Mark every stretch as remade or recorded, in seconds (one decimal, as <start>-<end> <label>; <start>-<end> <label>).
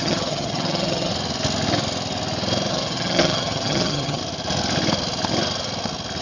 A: 0.0-1.1 remade; 1.1-2.7 recorded; 2.7-4.2 remade; 4.2-6.2 recorded